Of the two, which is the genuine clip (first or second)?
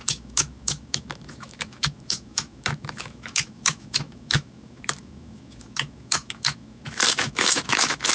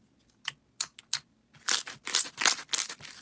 second